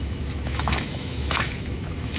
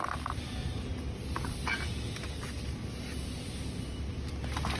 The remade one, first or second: first